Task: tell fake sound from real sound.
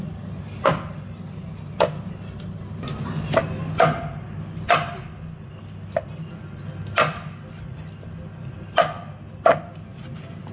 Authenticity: real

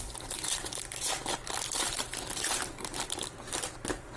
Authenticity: fake